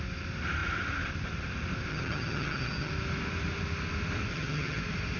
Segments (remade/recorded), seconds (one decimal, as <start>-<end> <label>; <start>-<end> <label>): 0.0-1.9 recorded; 1.9-2.9 remade; 2.9-4.3 recorded; 4.3-4.8 remade; 4.8-5.2 recorded